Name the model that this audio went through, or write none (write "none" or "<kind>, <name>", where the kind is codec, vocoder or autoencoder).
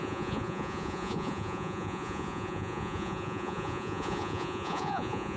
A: vocoder, Vocos